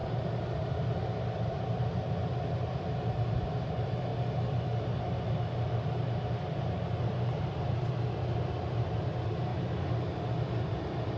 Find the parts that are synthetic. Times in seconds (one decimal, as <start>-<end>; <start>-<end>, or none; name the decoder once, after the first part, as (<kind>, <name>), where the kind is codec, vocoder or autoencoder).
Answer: 0.0-4.1 (vocoder, BigVGAN v2); 7.0-9.5; 10.6-11.2